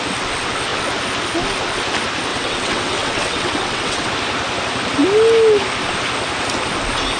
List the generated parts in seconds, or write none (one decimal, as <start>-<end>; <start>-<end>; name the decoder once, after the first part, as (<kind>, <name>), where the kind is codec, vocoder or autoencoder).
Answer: 2.3-4.1 (vocoder, WaveNeXt)